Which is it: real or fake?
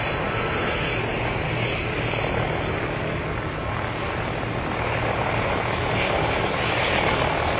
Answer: real